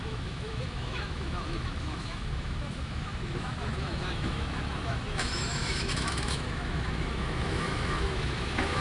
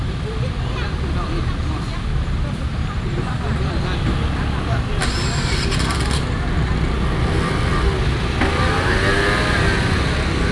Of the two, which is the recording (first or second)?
second